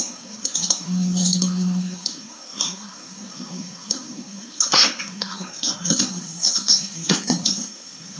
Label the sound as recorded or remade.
remade